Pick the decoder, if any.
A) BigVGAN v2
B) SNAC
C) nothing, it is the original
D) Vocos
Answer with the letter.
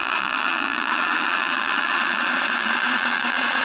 D